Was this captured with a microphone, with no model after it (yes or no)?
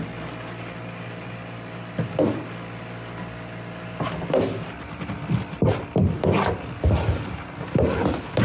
yes